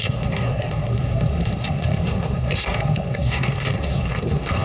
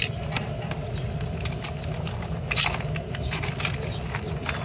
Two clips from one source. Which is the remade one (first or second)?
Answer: first